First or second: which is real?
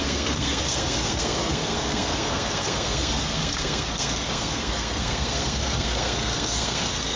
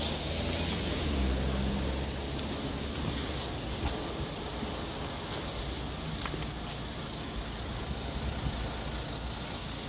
second